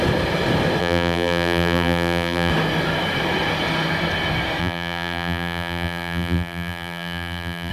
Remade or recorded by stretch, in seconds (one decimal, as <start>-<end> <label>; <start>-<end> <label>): 0.0-0.8 recorded; 0.8-2.5 remade; 2.5-4.6 recorded; 4.6-7.7 remade